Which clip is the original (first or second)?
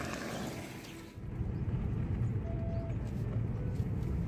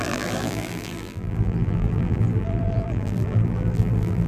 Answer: first